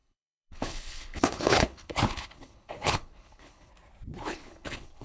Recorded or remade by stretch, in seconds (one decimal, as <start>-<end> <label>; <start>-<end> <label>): 0.0-3.7 remade; 3.7-4.2 recorded; 4.2-5.0 remade